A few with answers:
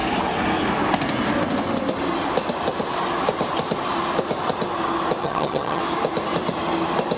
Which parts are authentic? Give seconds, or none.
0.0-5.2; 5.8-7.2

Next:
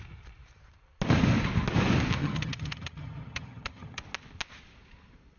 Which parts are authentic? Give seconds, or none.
0.0-2.2; 4.0-5.4